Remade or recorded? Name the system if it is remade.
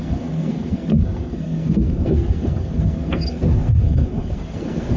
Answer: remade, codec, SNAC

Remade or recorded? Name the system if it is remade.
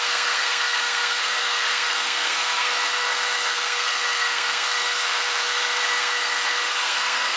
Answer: remade, codec, SNAC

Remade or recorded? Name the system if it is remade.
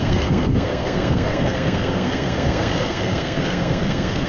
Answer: remade, codec, SNAC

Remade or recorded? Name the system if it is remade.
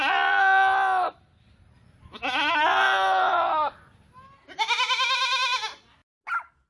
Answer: recorded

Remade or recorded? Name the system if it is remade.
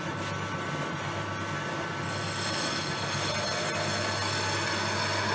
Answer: recorded